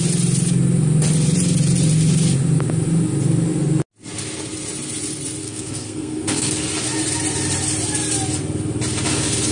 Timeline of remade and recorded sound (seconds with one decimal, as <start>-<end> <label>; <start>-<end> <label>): 0.0-5.4 recorded; 5.4-6.6 remade; 6.6-9.5 recorded